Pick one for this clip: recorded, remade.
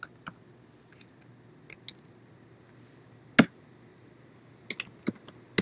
recorded